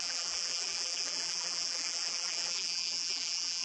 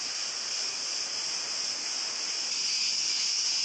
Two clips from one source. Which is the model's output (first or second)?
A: first